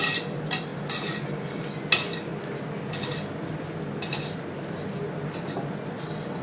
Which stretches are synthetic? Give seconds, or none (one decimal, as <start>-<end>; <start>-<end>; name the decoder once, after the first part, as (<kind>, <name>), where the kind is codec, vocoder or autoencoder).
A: none